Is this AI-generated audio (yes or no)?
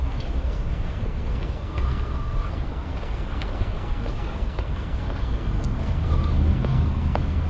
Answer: yes